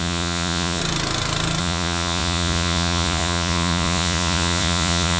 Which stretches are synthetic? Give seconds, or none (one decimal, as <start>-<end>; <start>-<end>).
0.0-0.8; 1.6-5.2